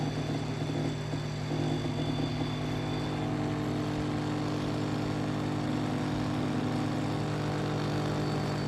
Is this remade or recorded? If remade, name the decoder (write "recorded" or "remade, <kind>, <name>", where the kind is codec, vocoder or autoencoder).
recorded